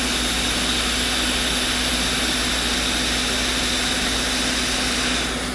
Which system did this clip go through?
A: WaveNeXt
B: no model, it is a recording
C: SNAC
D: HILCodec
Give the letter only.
B